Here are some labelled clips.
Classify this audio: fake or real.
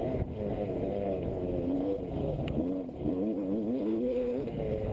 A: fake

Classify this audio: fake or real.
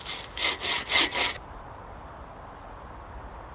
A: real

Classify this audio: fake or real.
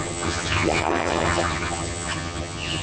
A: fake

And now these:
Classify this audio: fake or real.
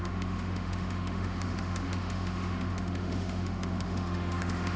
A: fake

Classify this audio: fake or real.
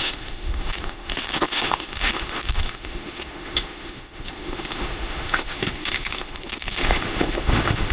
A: fake